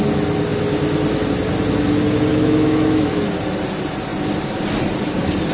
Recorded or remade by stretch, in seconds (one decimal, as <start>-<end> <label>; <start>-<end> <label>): 0.0-2.3 recorded; 2.3-3.2 remade; 3.2-5.5 recorded